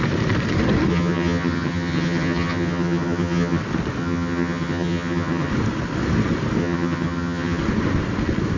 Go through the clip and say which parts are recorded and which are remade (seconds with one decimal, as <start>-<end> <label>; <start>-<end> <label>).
0.0-0.9 recorded; 0.9-3.6 remade; 3.6-4.0 recorded; 4.0-5.5 remade; 5.5-6.6 recorded; 6.6-7.6 remade; 7.6-8.6 recorded